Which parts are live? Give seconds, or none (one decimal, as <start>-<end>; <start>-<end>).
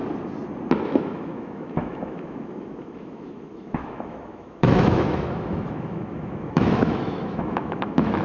0.0-0.8